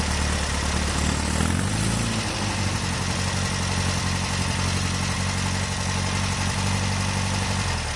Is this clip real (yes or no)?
yes